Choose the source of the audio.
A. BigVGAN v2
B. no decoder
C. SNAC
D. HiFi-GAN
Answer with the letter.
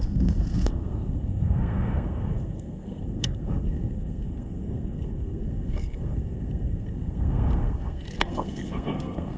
C